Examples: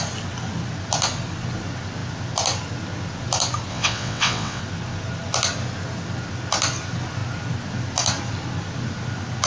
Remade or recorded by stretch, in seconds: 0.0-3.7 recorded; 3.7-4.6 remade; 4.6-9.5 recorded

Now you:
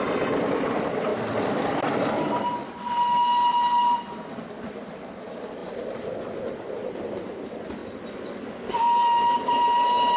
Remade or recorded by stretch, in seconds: 0.0-10.2 recorded

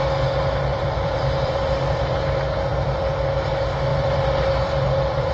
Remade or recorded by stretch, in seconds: 0.0-0.7 recorded; 0.7-2.0 remade; 2.0-3.9 recorded; 3.9-5.3 remade

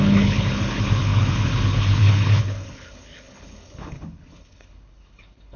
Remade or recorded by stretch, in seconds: 0.0-5.6 remade